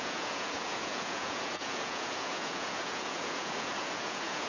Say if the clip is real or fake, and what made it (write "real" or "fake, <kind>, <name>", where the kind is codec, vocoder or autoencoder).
fake, vocoder, Vocos